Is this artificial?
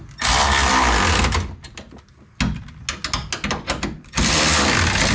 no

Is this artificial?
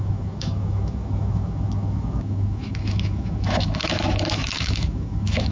yes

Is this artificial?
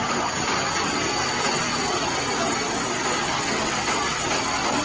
no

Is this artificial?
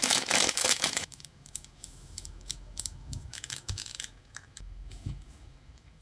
yes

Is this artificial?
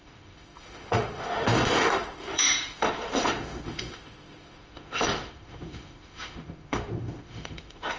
yes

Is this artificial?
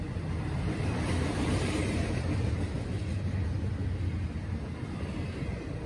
no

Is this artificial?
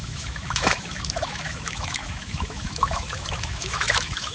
yes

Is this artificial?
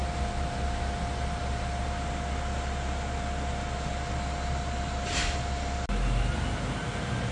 no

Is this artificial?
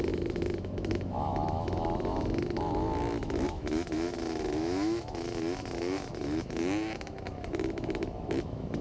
yes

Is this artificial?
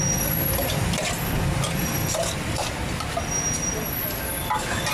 no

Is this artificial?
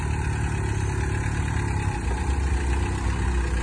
no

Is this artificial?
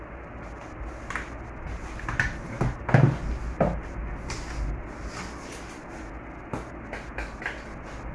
no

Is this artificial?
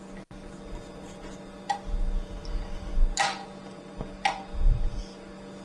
no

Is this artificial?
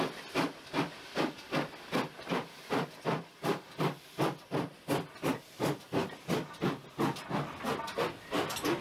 no